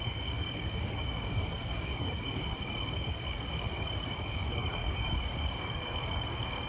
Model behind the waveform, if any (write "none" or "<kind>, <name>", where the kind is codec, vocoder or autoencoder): codec, DAC